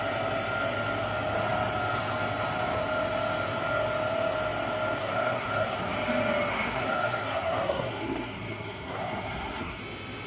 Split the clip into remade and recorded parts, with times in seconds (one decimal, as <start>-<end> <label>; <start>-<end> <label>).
0.0-5.0 recorded; 5.0-5.9 remade; 5.9-6.5 recorded; 6.5-9.8 remade; 9.8-10.3 recorded